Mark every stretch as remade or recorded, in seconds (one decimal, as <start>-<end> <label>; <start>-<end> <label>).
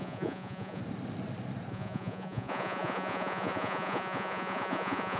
0.0-0.8 remade; 0.8-1.7 recorded; 1.7-5.2 remade